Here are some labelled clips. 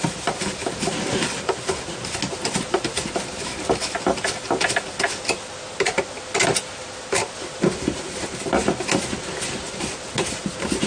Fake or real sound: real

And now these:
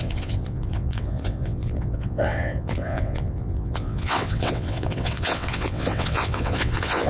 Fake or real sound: fake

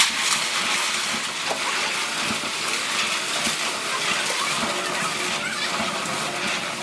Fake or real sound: real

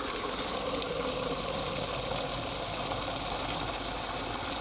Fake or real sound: real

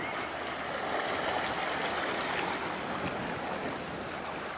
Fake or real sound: real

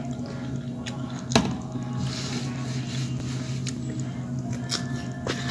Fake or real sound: real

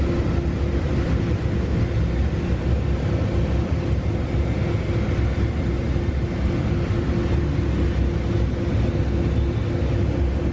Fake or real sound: real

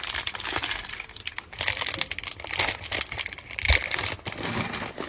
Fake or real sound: real